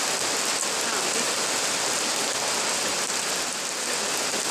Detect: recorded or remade recorded